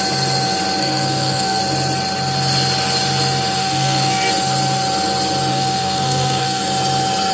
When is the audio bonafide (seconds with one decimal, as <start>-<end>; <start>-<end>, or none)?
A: 0.0-0.8; 1.6-3.6; 4.3-5.5; 6.6-7.3